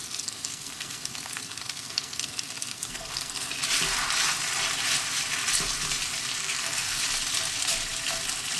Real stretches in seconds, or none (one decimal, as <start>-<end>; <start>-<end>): 3.5-6.4; 7.0-8.6